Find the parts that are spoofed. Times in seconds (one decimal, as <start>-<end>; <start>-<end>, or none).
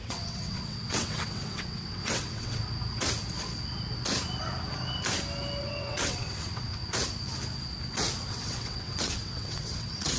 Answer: 0.0-2.6; 5.6-6.8; 8.3-10.2